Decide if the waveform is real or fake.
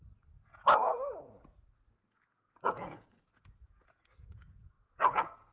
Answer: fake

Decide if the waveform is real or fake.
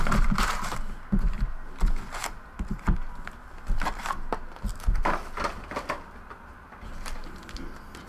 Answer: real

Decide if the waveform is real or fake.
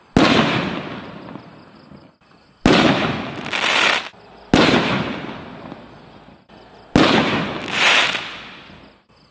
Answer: real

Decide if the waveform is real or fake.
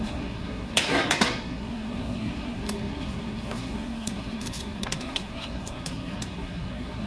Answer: fake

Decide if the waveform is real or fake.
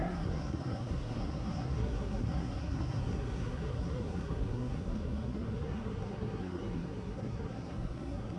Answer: fake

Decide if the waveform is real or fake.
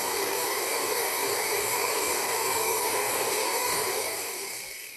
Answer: fake